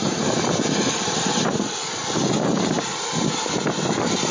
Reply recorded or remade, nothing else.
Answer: recorded